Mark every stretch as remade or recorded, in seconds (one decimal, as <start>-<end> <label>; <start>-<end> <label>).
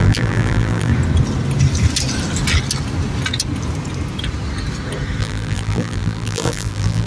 0.0-0.9 remade; 0.9-5.2 recorded; 5.2-7.1 remade